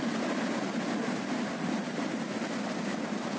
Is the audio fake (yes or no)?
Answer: no